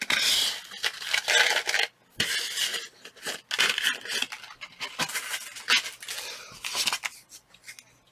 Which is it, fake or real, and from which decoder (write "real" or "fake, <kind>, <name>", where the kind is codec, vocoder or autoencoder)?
real